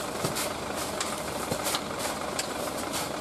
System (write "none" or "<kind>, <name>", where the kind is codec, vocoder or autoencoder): vocoder, BigVGAN v2